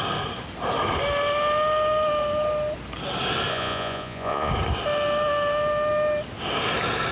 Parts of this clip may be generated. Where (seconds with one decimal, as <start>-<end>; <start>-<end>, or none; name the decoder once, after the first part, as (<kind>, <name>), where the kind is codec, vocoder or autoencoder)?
3.5-4.5 (vocoder, Vocos)